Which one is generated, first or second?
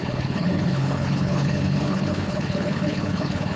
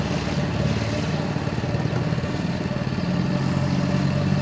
first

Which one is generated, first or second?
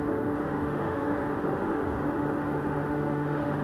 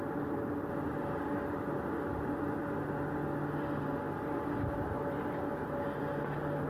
first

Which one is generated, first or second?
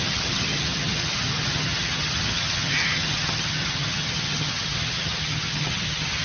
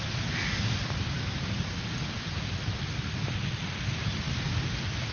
first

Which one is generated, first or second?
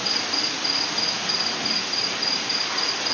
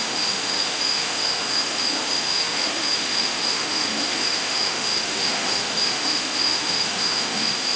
second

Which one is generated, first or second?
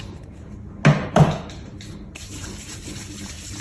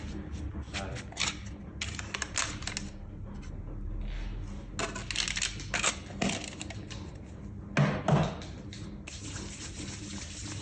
first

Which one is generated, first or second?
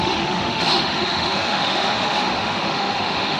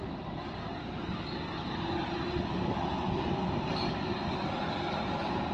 first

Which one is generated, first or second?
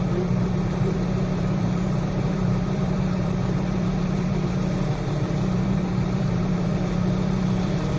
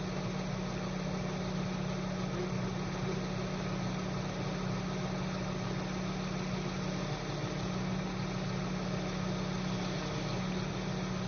first